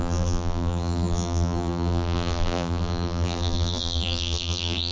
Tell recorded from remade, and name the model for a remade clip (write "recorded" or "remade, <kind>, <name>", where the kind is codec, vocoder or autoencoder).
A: remade, vocoder, BigVGAN v2